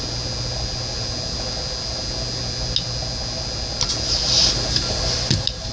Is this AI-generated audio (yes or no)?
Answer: no